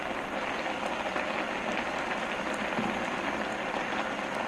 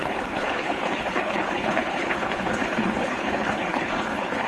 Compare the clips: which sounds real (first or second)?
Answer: first